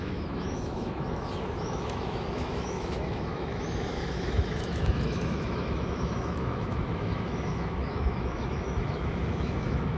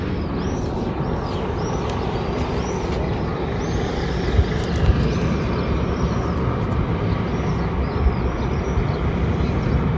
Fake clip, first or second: first